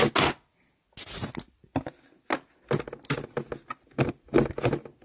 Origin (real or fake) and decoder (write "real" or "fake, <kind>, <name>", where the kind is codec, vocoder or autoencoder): real